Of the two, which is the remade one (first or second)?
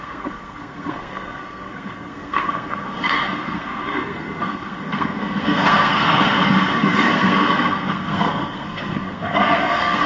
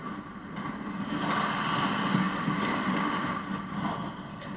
first